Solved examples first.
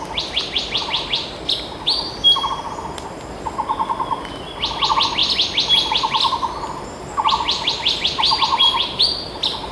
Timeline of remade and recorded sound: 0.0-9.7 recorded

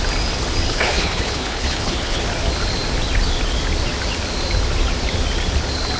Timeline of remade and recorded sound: 0.0-0.7 recorded; 0.7-2.2 remade; 2.2-6.0 recorded

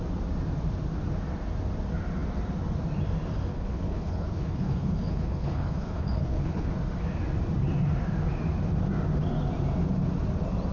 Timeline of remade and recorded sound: 0.0-3.5 recorded; 3.5-6.7 remade; 6.7-10.7 recorded

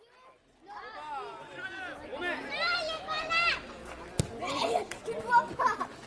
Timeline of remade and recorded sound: 0.0-4.4 recorded; 4.4-5.0 remade; 5.0-6.1 recorded

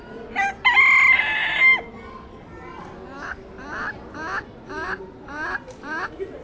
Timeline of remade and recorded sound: 0.0-6.4 recorded